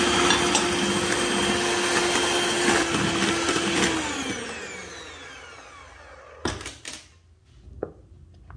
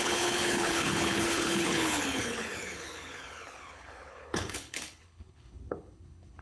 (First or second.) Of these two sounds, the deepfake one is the second